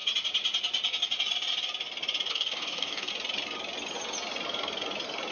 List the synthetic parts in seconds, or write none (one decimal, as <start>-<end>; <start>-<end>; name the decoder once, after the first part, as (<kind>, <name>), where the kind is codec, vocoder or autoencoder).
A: 2.3-3.1 (codec, DAC)